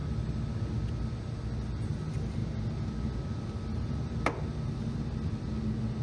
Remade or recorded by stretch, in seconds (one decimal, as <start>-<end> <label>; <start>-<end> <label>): 0.0-6.0 recorded